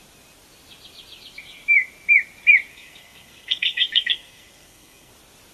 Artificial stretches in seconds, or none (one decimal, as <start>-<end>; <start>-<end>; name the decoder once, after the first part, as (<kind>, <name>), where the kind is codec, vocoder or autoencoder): 2.7-5.1 (codec, SNAC)